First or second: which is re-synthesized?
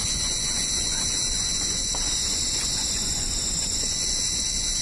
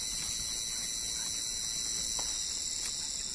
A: first